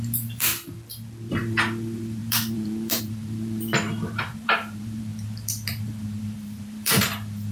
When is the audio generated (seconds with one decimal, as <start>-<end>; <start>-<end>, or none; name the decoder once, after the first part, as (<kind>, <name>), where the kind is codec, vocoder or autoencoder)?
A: 0.0-0.5 (vocoder, BigVGAN v2); 1.3-7.5